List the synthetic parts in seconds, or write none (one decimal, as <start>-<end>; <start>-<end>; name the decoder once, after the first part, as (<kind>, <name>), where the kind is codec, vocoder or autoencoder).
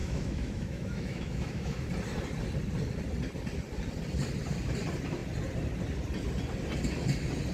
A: 0.0-1.9 (autoencoder, DAC-VAE)